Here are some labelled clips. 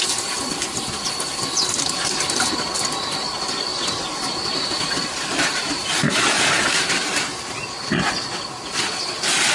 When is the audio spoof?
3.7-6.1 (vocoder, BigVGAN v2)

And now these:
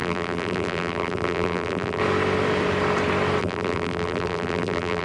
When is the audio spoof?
0.0-2.0 (vocoder, BigVGAN v2); 3.4-5.0

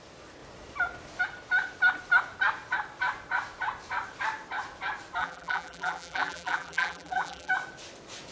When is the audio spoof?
5.2-7.5 (vocoder, BigVGAN v2)

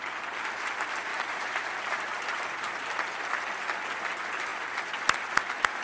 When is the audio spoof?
1.1-3.2 (vocoder, BigVGAN v2)